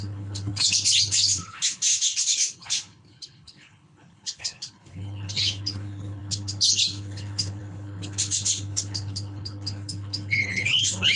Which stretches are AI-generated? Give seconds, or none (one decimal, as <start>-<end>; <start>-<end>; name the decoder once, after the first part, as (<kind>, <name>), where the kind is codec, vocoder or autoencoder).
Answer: 0.0-11.2 (codec, HILCodec)